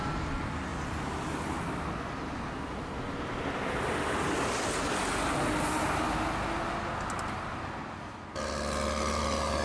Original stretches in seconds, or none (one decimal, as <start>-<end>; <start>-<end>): 0.0-9.6